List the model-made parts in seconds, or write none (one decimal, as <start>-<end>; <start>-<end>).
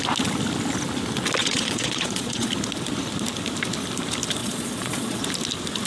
1.4-2.5; 4.4-5.2